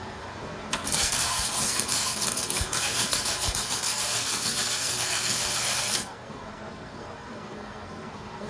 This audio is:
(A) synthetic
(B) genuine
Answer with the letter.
A